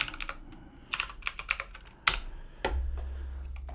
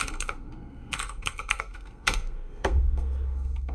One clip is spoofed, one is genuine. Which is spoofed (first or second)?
second